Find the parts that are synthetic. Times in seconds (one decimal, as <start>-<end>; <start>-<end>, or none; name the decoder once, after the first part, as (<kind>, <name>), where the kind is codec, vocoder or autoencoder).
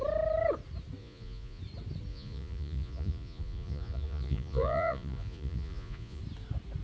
1.0-1.6 (vocoder, Vocos); 2.1-6.2